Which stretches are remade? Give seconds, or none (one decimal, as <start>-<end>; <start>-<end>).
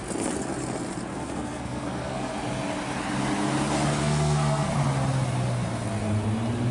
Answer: 1.1-2.3; 4.0-4.7